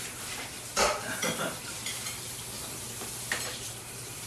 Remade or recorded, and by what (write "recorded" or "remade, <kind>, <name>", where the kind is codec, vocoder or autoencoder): remade, vocoder, BigVGAN v2